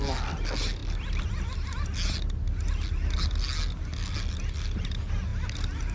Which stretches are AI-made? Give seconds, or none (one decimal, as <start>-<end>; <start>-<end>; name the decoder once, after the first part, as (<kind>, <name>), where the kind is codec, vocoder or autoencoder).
none